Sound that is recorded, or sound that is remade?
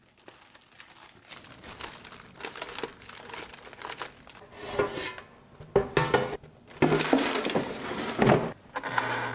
recorded